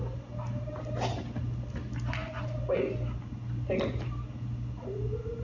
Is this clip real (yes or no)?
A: yes